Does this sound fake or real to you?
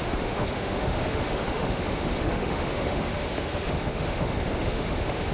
fake